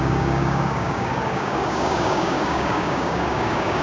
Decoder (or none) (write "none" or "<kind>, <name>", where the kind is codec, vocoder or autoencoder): codec, DAC